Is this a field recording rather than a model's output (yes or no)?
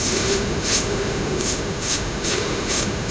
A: no